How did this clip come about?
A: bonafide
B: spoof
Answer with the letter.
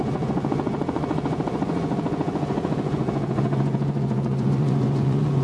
B